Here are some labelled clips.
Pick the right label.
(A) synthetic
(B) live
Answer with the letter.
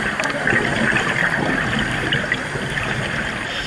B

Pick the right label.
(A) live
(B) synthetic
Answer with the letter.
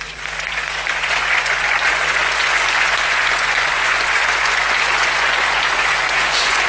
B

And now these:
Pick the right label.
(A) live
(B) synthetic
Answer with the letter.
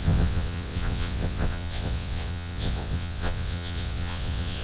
B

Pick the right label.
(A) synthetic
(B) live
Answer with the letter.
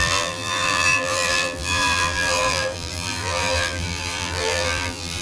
A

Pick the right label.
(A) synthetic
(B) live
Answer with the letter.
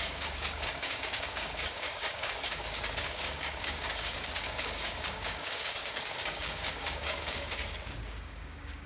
A